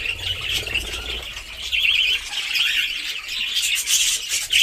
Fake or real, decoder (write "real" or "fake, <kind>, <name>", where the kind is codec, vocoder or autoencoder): real